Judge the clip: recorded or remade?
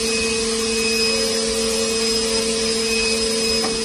recorded